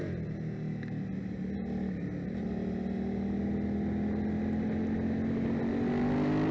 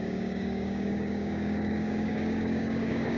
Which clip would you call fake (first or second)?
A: second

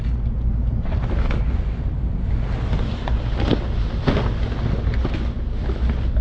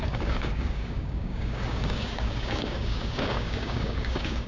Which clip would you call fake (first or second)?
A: second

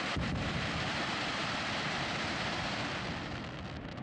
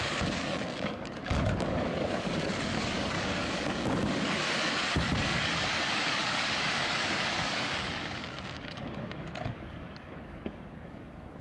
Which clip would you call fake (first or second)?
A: second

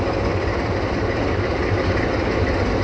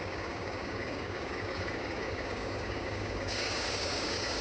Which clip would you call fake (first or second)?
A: second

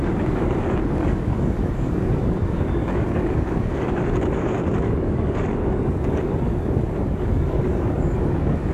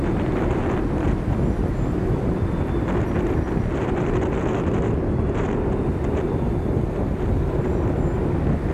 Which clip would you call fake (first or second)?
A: first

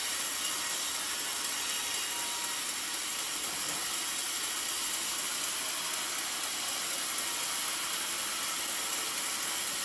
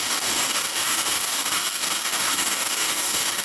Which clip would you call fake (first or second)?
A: second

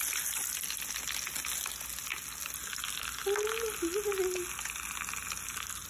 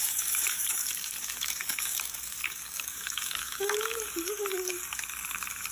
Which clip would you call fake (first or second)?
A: second